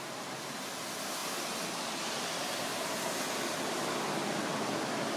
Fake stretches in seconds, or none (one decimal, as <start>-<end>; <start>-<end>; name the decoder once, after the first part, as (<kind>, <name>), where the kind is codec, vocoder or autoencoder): none